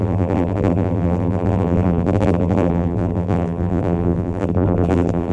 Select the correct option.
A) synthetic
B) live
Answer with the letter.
A